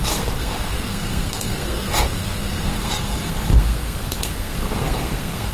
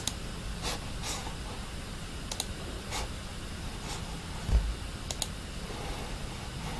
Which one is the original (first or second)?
second